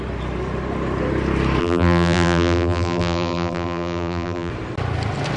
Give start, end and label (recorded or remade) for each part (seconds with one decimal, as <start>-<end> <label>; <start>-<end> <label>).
0.0-1.6 recorded; 1.6-4.5 remade; 4.5-5.4 recorded